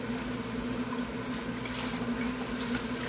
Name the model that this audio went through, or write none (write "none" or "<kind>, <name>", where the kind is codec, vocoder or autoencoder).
none